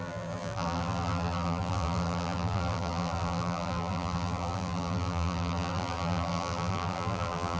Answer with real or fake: fake